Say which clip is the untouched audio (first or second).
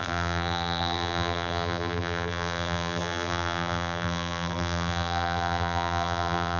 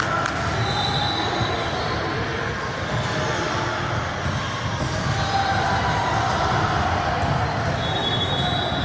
second